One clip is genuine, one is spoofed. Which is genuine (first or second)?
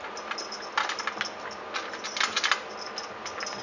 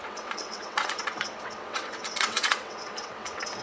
first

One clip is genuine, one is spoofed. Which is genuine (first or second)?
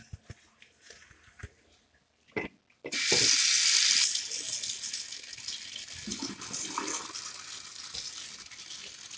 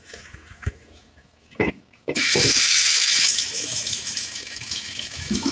first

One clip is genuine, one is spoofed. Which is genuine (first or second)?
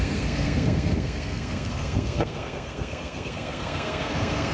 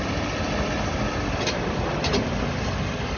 second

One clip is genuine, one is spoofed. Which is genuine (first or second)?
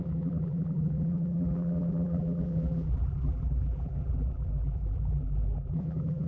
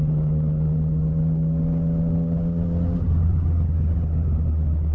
second